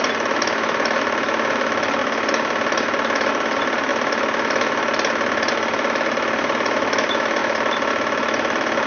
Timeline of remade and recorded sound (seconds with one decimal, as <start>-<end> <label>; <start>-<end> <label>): 0.0-8.9 recorded